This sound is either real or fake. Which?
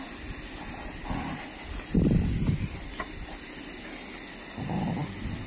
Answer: real